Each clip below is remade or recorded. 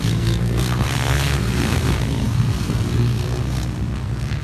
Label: remade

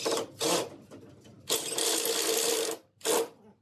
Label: recorded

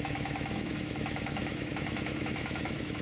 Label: remade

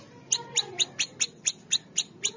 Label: recorded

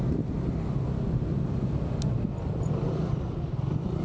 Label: recorded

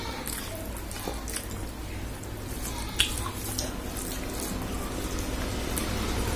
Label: recorded